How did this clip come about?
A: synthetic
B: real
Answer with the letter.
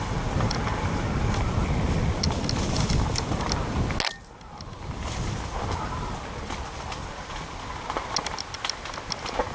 B